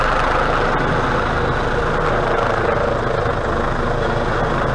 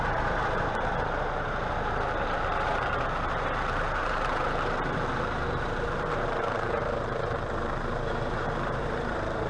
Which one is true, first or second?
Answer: first